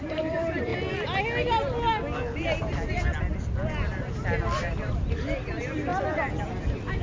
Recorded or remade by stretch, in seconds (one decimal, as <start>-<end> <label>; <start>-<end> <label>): 0.0-0.7 remade; 0.7-4.9 recorded; 4.9-5.9 remade; 5.9-7.0 recorded